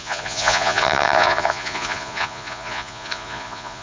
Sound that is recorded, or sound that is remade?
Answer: remade